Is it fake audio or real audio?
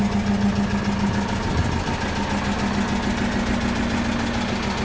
real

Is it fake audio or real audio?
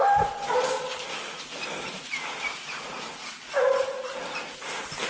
real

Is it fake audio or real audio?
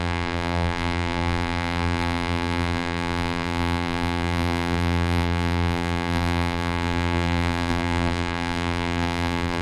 fake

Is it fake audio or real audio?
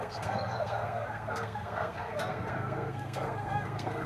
fake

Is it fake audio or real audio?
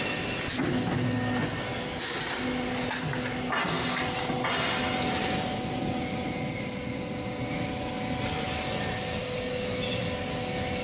real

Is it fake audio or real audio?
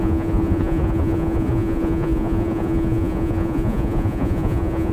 fake